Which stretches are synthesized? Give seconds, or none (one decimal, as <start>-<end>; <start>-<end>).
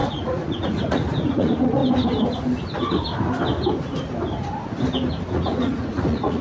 0.0-1.8; 5.3-6.4